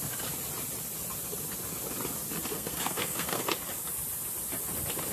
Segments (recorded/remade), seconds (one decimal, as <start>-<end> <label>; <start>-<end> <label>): 0.0-2.5 recorded; 2.5-3.5 remade; 3.5-5.1 recorded